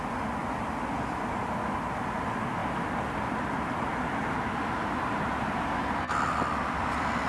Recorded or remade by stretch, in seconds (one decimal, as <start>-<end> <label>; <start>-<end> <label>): 0.0-7.3 recorded